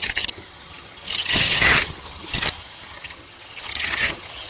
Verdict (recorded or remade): remade